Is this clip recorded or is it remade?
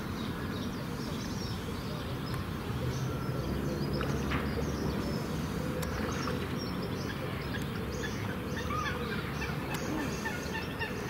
recorded